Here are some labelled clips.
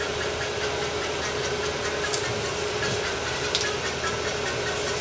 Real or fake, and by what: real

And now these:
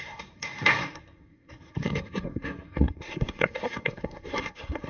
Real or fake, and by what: fake, codec, SNAC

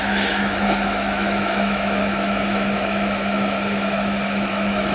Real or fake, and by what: fake, autoencoder, DAC-VAE